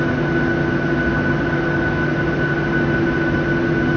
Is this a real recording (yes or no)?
yes